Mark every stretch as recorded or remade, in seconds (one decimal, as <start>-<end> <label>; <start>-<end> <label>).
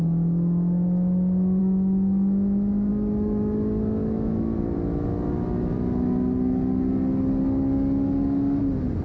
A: 0.0-1.6 recorded; 1.6-2.9 remade; 2.9-4.0 recorded; 4.0-4.6 remade; 4.6-9.0 recorded